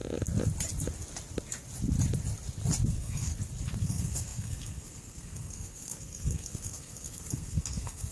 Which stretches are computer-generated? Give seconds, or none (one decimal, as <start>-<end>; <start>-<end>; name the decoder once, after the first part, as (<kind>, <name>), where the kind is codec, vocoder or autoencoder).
2.9-3.3 (codec, SNAC); 3.8-8.1